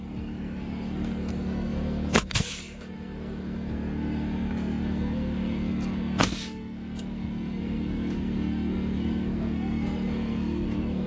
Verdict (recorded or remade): remade